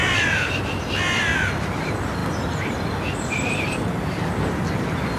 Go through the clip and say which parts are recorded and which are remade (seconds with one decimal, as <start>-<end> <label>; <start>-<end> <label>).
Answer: 0.0-5.2 recorded